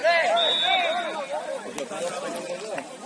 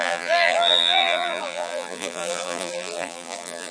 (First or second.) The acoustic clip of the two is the first